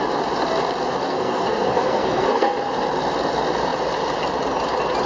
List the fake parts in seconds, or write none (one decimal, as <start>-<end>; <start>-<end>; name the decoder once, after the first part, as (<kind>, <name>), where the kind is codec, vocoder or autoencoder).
1.0-2.5 (codec, SNAC)